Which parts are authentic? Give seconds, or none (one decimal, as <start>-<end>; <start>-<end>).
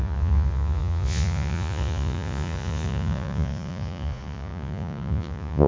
none